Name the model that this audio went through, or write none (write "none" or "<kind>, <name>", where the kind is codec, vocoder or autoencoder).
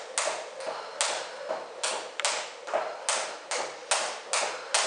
none